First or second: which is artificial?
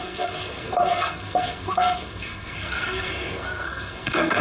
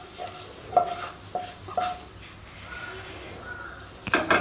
first